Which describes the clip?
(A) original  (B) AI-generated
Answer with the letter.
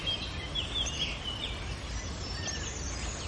A